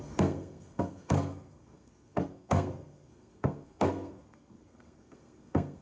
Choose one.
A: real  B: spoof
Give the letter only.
B